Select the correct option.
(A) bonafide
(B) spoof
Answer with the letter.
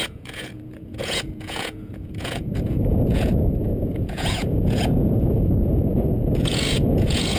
B